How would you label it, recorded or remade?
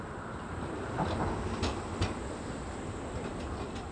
recorded